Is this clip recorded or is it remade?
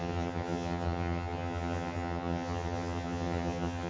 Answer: remade